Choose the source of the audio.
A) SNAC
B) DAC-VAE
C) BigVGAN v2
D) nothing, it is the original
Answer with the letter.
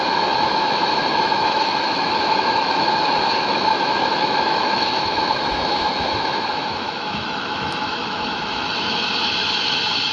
B